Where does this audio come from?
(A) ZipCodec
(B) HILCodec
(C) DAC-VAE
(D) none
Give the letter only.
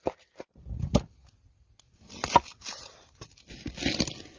D